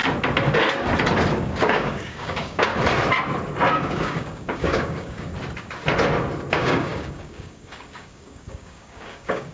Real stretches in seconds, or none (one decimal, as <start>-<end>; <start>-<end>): 0.0-1.3; 2.7-3.7; 5.3-6.5